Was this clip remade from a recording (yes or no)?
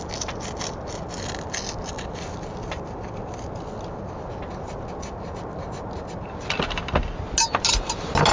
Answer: no